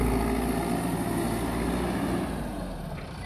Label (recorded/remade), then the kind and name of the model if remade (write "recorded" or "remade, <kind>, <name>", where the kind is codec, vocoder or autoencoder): recorded